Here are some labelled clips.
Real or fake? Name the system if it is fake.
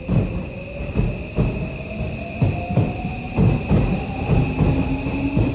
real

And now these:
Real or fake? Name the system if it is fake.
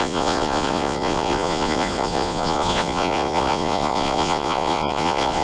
fake, vocoder, Vocos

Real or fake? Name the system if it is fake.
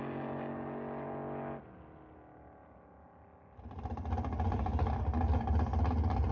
real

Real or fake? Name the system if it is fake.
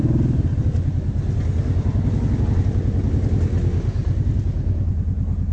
real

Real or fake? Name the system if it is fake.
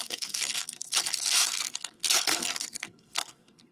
fake, codec, SNAC